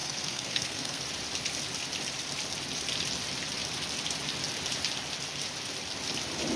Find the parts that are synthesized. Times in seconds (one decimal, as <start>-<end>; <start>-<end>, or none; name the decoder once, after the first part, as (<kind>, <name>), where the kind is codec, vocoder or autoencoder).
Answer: 0.0-1.0 (codec, SNAC)